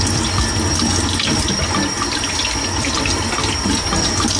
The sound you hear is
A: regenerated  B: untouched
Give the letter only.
B